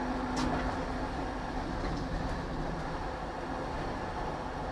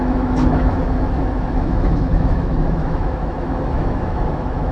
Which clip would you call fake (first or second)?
second